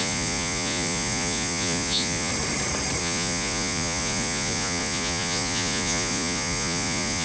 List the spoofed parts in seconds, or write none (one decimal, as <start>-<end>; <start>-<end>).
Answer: 0.0-2.3; 3.0-7.2